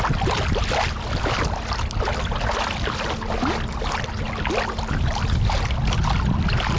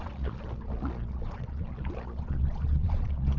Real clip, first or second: first